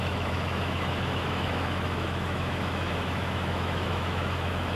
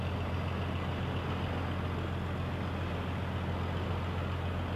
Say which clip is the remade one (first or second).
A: first